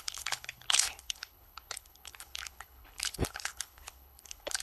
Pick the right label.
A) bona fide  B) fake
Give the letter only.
B